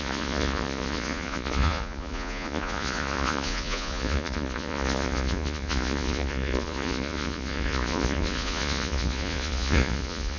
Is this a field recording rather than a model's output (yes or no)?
no